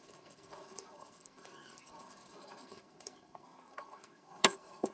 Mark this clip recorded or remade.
remade